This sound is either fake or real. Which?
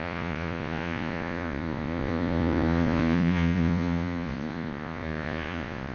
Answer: fake